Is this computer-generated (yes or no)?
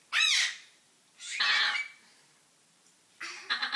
no